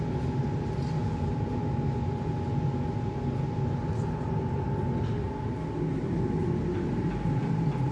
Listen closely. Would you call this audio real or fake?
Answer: real